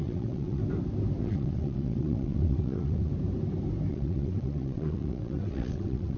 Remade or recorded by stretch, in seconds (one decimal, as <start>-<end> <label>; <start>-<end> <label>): 0.0-0.6 remade; 0.6-1.2 recorded; 1.2-3.1 remade; 3.1-3.9 recorded; 3.9-6.2 remade